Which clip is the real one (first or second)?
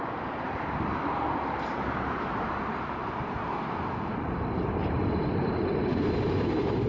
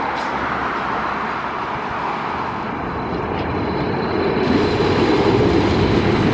second